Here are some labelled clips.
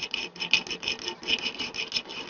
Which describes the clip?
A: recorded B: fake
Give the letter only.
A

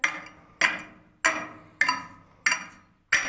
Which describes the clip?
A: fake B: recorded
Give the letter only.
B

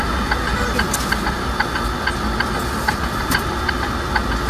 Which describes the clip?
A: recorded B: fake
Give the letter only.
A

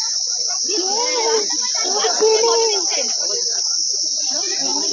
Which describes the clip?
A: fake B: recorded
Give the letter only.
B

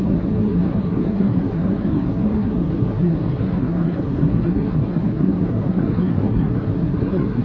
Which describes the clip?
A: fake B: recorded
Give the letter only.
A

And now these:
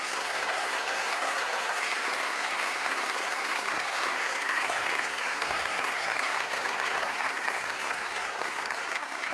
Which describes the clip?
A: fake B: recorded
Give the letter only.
A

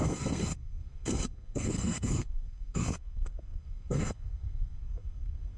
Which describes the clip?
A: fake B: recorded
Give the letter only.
A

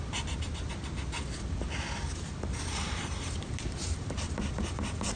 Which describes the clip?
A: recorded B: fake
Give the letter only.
A